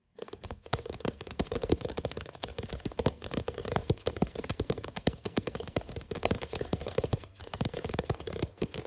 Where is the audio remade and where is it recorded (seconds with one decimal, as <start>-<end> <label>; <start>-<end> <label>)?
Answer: 0.0-8.9 remade